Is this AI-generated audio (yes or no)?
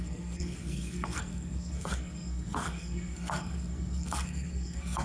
yes